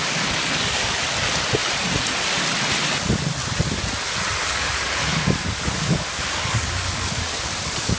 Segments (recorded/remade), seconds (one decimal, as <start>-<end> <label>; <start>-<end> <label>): 0.0-1.1 remade; 1.1-4.4 recorded; 4.4-8.0 remade